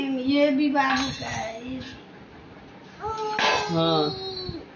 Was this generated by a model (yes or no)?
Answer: no